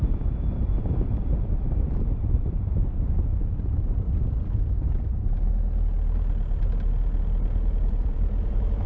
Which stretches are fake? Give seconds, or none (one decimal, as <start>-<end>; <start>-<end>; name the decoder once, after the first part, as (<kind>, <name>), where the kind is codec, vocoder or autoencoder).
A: 0.0-3.3 (vocoder, BigVGAN v2); 7.9-8.9